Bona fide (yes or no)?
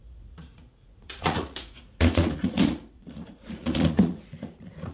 no